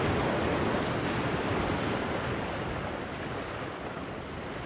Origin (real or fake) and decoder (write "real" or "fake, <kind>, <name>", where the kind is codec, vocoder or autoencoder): real